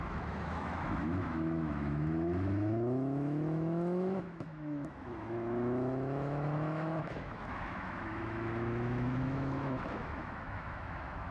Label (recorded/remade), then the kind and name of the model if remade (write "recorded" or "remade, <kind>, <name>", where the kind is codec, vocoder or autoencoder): remade, autoencoder, DAC-VAE